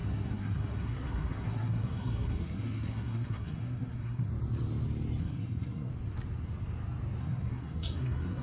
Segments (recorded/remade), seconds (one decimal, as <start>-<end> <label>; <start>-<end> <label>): 0.0-4.3 remade; 4.3-5.2 recorded; 5.2-5.9 remade; 5.9-7.2 recorded; 7.2-8.4 remade